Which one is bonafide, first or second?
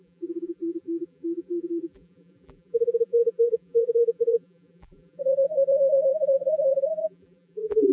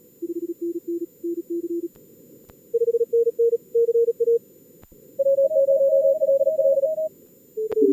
second